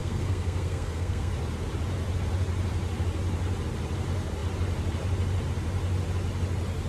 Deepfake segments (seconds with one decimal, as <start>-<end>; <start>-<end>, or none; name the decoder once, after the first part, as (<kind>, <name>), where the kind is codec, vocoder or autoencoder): 0.0-1.3 (codec, SNAC)